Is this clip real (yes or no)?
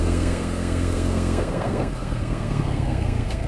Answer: no